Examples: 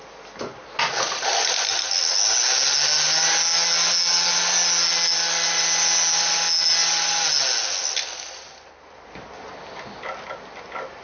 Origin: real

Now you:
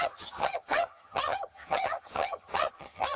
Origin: fake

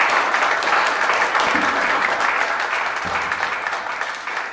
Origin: real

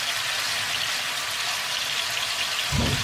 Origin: real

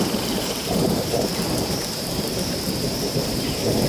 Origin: fake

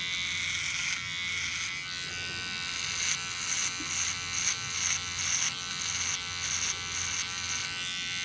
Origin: real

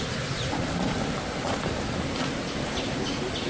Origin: real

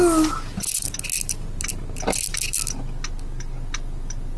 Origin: real